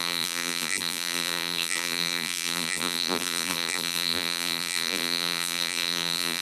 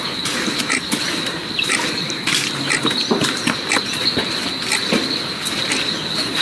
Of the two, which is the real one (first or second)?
second